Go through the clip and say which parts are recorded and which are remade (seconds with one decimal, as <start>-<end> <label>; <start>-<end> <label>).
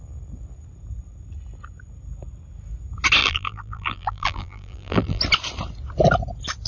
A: 0.0-3.2 recorded; 3.2-5.2 remade; 5.2-6.7 recorded